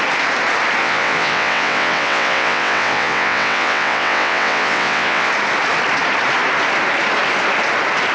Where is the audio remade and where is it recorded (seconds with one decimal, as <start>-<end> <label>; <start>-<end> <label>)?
0.0-0.8 recorded; 0.8-5.3 remade; 5.3-8.1 recorded